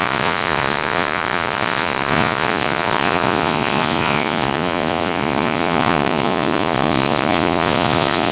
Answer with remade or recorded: remade